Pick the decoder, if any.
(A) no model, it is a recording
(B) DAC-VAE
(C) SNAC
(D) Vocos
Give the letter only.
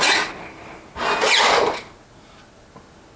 A